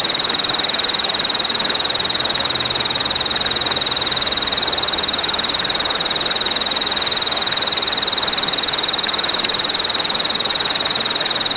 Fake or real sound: real